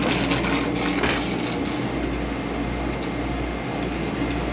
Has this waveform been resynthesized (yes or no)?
no